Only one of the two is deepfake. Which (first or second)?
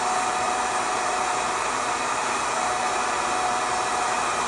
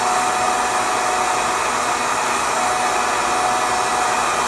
first